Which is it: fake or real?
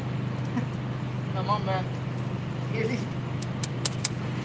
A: real